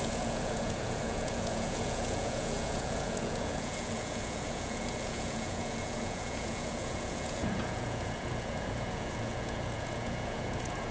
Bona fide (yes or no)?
no